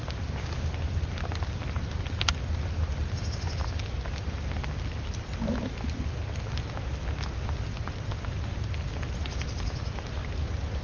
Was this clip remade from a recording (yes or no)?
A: no